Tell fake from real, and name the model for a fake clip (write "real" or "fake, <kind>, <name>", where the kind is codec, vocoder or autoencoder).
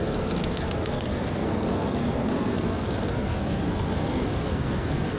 fake, codec, SNAC